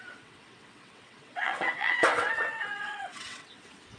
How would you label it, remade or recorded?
remade